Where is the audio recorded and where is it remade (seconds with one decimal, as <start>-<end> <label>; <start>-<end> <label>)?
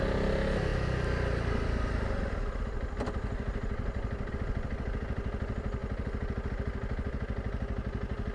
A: 0.0-8.3 recorded